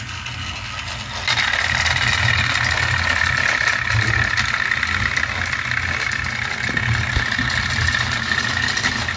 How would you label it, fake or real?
real